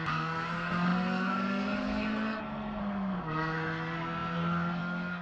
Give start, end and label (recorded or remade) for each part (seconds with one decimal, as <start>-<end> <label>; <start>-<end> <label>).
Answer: 0.0-5.2 remade